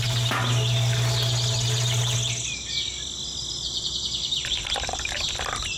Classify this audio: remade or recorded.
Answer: recorded